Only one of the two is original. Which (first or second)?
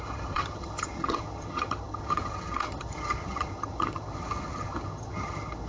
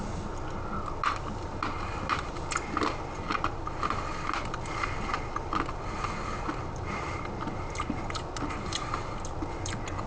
second